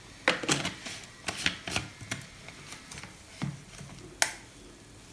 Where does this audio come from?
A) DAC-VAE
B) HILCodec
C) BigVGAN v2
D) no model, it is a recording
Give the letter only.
D